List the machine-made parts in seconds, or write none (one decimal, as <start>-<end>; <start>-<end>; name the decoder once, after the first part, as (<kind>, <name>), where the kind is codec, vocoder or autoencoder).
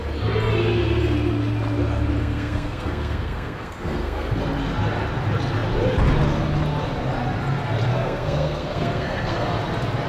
2.2-4.4 (codec, SNAC); 7.9-9.5